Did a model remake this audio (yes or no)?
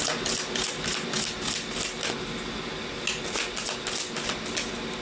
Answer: no